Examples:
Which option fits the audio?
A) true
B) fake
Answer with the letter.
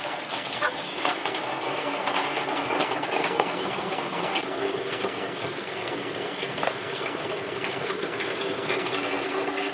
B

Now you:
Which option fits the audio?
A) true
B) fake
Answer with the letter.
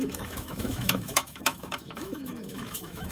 B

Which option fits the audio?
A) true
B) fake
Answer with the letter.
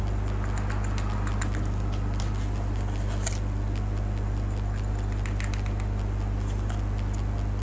A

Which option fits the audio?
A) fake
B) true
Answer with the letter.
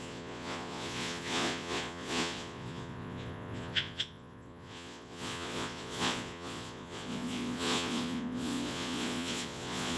A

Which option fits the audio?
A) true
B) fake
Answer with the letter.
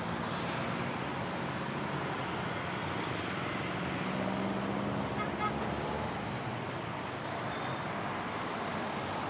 A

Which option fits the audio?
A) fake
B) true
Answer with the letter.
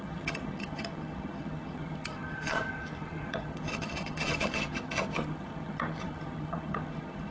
A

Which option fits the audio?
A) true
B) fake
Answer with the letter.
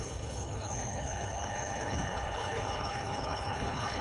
B